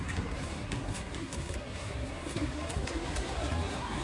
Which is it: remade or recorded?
remade